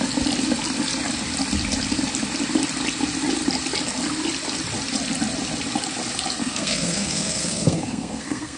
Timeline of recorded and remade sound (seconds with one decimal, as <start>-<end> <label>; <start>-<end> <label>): 0.0-6.4 recorded; 6.4-8.6 remade

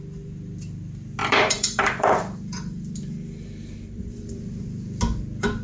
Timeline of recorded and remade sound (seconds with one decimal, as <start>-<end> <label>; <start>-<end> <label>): 0.0-1.2 recorded; 1.2-4.6 remade; 4.6-5.6 recorded

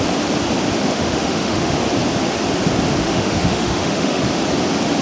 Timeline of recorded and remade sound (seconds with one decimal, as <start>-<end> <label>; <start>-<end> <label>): 0.0-0.9 recorded; 0.9-1.8 remade; 1.8-3.0 recorded; 3.0-4.2 remade; 4.2-5.0 recorded

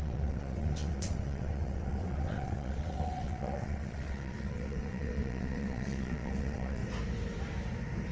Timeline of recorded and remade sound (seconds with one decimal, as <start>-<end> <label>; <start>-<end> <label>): 0.0-6.8 remade; 6.8-8.1 recorded

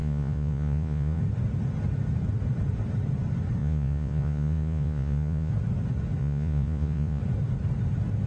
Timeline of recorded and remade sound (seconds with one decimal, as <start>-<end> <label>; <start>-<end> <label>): 0.0-1.2 remade; 1.2-3.6 recorded; 3.6-5.5 remade; 5.5-6.2 recorded; 6.2-7.2 remade; 7.2-8.3 recorded

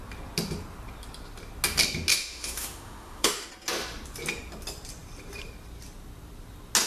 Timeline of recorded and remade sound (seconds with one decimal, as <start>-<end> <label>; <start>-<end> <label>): 0.0-2.1 recorded; 2.1-3.5 remade; 3.5-6.9 recorded

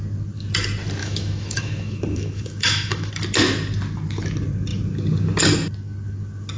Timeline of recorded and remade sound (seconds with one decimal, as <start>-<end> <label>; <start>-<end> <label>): 0.0-1.0 recorded; 1.0-3.1 remade; 3.1-6.6 recorded